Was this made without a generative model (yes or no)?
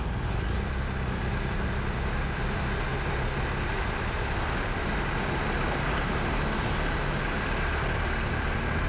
yes